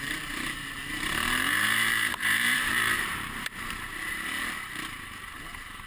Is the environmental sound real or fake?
fake